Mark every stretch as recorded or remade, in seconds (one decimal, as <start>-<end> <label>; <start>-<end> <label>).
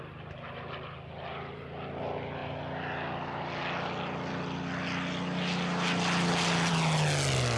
0.0-7.6 recorded